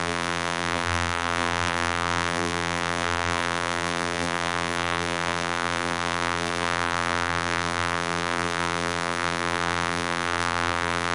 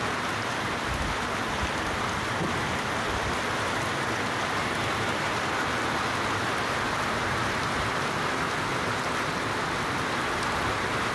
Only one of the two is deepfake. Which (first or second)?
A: first